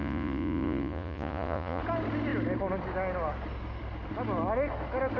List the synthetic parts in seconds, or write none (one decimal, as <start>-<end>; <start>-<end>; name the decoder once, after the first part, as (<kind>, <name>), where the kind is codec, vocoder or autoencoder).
0.0-1.8 (vocoder, Vocos)